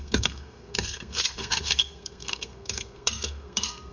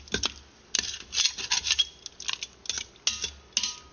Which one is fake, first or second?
first